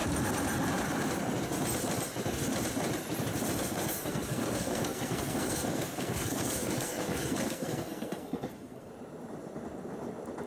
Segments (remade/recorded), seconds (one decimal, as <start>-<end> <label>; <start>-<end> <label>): 0.0-3.6 recorded; 3.6-8.9 remade; 8.9-10.5 recorded